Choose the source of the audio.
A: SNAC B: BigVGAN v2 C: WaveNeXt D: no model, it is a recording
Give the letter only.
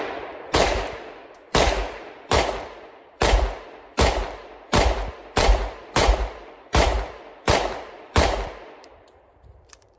B